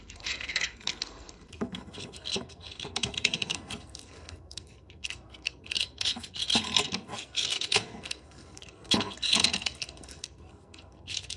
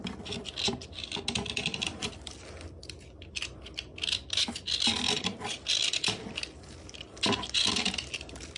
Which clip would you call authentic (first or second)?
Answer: second